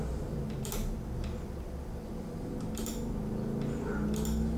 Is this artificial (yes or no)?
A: no